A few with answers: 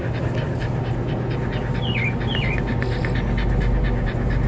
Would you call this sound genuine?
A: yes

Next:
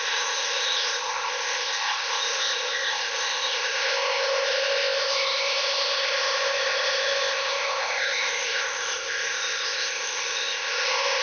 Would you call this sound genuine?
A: no